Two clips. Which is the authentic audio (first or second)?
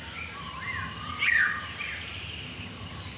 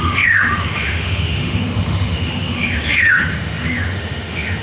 first